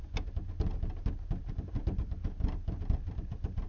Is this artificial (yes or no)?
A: no